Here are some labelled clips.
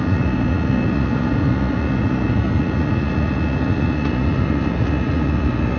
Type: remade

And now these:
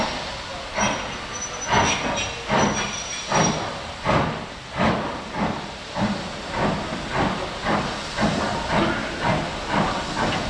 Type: recorded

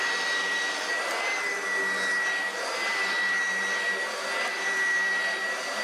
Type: recorded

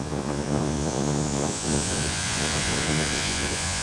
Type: remade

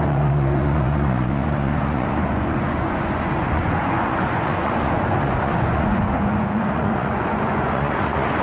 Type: remade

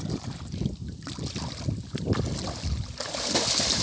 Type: recorded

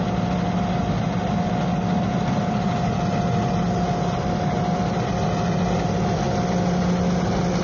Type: recorded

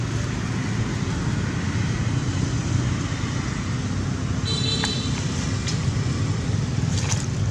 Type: recorded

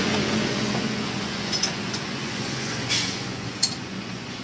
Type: remade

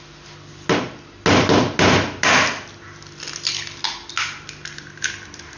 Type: recorded